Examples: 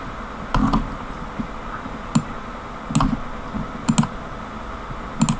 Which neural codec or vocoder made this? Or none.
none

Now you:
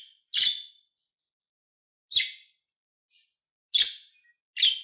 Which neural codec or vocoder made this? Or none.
none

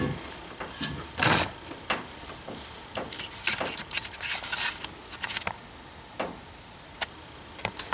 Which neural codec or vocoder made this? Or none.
none